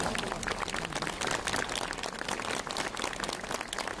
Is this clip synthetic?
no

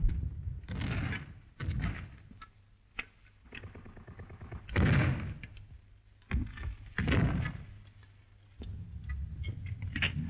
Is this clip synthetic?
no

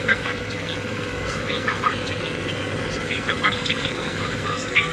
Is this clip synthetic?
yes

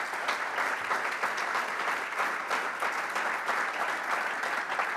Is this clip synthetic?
no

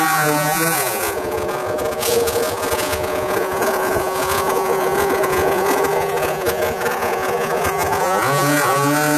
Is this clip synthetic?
yes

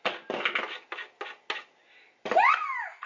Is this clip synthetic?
no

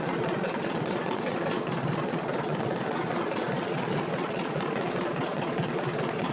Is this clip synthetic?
yes